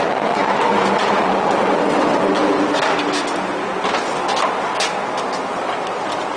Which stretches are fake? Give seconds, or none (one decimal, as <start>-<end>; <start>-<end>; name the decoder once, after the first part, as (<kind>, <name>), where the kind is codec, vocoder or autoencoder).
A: 0.0-2.4 (vocoder, WaveNeXt)